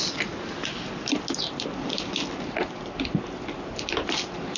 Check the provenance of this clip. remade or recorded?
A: recorded